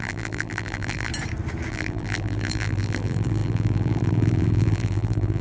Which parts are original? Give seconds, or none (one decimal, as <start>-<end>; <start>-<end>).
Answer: 1.1-1.7